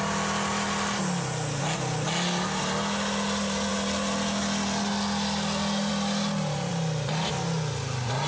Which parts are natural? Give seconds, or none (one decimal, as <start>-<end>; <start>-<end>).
0.0-8.3

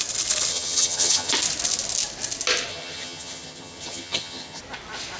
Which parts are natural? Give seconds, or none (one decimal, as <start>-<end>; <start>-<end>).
0.0-0.5; 1.3-2.7; 4.6-5.2

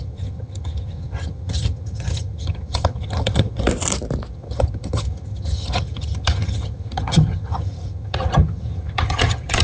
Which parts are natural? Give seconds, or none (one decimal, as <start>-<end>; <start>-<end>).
3.7-4.3

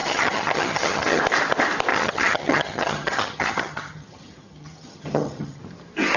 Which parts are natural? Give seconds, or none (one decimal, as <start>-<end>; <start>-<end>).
1.2-1.9; 5.6-6.2

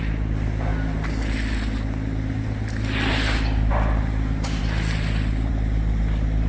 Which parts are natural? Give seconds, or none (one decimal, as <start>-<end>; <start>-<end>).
0.0-6.5

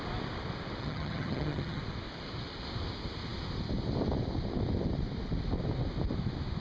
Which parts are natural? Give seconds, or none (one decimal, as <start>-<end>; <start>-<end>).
0.0-0.8; 1.8-6.6

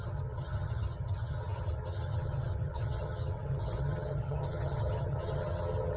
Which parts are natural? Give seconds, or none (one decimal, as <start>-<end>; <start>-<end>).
none